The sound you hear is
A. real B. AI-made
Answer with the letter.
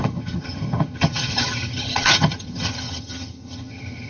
B